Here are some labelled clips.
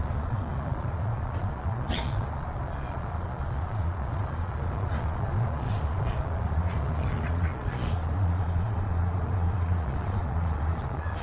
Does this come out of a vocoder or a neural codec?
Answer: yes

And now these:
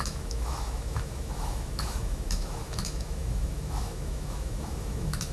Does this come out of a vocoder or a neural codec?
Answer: yes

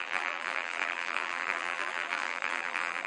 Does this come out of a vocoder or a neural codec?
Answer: yes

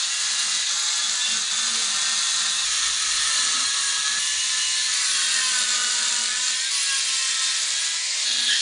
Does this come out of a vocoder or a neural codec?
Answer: no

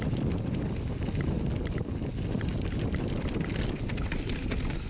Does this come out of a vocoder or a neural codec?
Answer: no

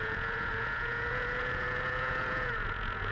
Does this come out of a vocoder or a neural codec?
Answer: yes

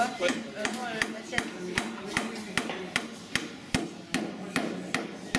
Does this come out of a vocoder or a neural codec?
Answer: no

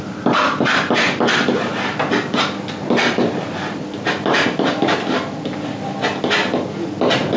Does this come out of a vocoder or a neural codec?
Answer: no